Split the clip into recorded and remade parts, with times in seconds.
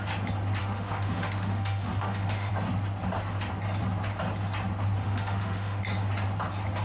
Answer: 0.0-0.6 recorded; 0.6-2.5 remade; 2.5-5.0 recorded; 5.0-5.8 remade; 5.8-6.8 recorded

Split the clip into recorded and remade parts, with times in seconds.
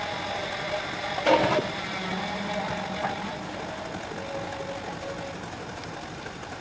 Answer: 0.0-6.6 recorded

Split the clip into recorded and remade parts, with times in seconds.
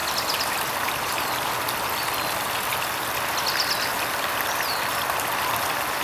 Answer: 0.0-6.0 recorded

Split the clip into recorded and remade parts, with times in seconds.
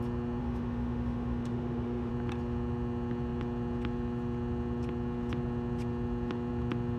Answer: 0.0-0.4 recorded; 0.4-2.1 remade; 2.1-7.0 recorded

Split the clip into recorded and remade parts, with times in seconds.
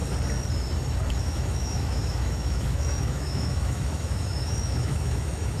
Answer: 0.0-1.1 recorded; 1.1-5.6 remade